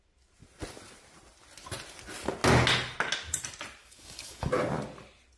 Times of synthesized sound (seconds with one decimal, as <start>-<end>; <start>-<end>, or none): 3.8-4.5